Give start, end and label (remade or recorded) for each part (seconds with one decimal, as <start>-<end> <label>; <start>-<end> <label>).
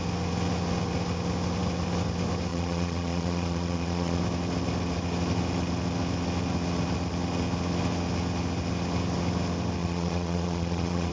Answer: 0.0-2.5 recorded; 2.5-4.2 remade; 4.2-9.8 recorded; 9.8-11.1 remade